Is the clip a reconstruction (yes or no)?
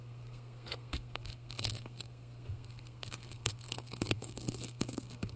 yes